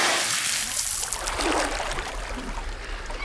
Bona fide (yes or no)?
yes